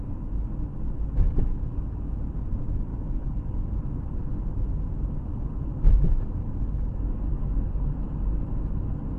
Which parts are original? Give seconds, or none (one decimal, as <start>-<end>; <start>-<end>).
0.0-2.9; 3.8-7.3; 7.9-9.2